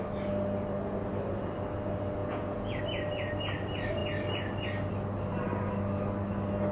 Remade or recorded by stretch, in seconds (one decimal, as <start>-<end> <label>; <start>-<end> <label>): 0.0-2.2 recorded; 2.2-2.8 remade; 2.8-6.7 recorded